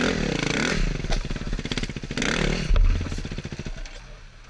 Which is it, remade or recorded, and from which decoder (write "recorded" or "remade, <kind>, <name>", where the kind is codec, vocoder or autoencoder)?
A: recorded